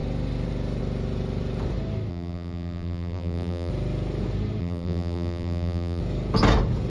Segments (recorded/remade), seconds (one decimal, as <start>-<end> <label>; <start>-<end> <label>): 0.0-2.1 recorded; 2.1-3.7 remade; 3.7-4.6 recorded; 4.6-6.0 remade; 6.0-6.9 recorded